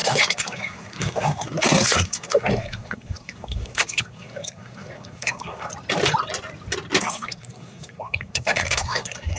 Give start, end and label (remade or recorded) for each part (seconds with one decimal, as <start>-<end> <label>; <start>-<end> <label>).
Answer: 0.0-5.7 remade; 5.7-7.0 recorded; 7.0-9.4 remade